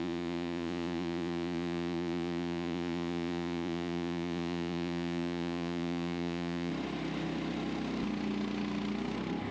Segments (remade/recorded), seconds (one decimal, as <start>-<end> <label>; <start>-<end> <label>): 0.0-6.7 remade; 6.7-9.5 recorded